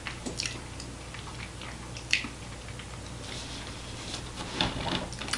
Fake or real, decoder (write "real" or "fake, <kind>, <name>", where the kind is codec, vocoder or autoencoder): real